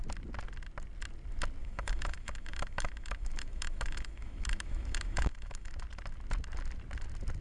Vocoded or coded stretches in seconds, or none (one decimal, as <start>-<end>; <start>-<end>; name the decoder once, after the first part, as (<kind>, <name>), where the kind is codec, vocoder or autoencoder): 1.6-5.7 (autoencoder, DAC-VAE)